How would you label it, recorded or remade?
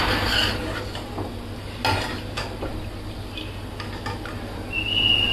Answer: recorded